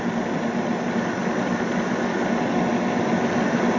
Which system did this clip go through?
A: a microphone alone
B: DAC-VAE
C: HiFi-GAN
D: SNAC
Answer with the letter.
A